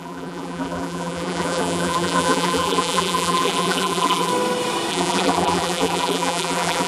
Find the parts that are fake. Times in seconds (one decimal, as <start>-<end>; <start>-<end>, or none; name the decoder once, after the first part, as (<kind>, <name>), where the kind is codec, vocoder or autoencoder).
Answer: 0.0-4.3 (vocoder, BigVGAN v2); 4.9-6.9